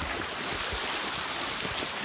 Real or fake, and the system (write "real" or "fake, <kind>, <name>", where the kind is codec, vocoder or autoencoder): real